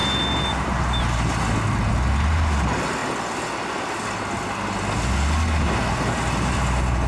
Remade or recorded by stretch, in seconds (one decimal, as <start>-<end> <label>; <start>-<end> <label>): 0.0-7.1 recorded